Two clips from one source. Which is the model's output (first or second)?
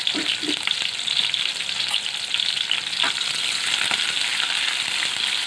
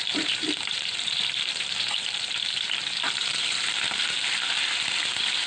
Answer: second